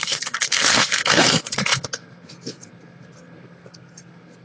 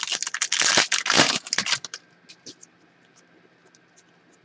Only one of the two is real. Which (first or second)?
second